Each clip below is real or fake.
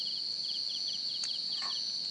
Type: real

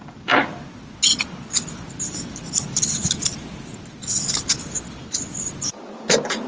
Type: real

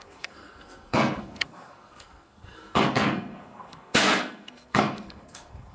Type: fake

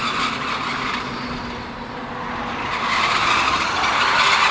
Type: real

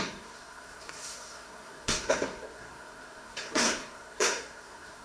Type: fake